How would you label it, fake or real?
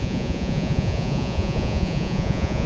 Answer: fake